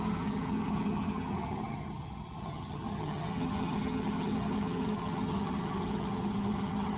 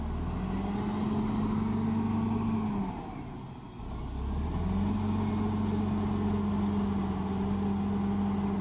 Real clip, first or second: second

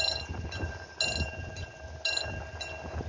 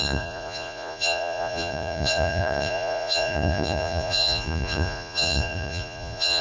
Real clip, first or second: first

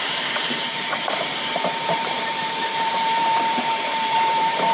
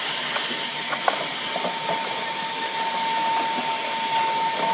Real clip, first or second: second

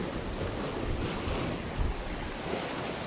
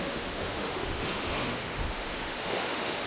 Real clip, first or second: first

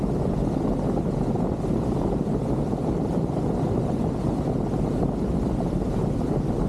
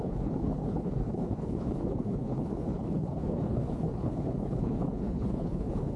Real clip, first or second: first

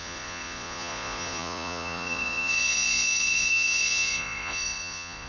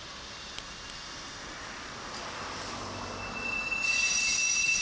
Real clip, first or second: second